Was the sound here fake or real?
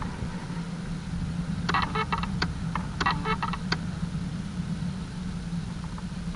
real